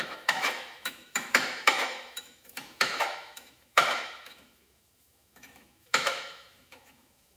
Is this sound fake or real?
fake